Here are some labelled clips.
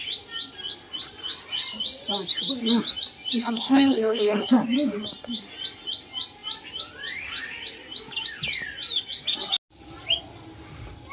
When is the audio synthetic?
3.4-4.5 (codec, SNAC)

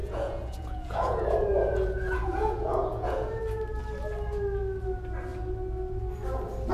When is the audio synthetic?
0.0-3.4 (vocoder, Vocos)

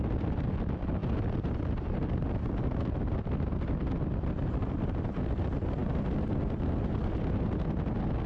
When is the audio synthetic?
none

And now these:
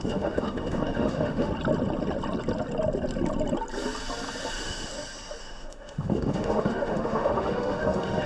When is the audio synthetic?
0.0-1.5 (autoencoder, DAC-VAE); 4.5-4.9; 5.4-8.3

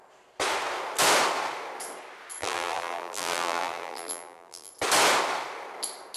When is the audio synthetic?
2.4-4.7 (vocoder, BigVGAN v2)

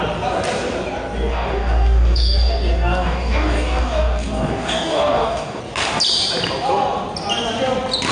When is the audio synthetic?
1.3-5.6 (codec, DAC)

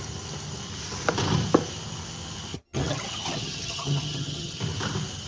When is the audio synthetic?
2.5-4.6 (vocoder, HiFi-GAN)